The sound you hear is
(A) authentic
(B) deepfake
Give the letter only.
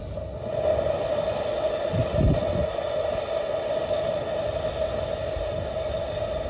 A